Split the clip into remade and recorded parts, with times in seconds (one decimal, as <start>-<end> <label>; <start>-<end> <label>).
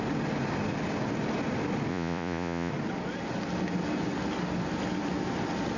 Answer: 0.0-1.9 recorded; 1.9-2.7 remade; 2.7-5.8 recorded